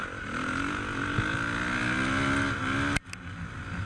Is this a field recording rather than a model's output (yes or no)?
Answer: yes